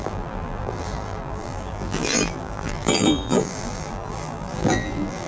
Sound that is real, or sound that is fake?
fake